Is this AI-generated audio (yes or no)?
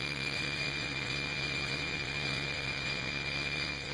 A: yes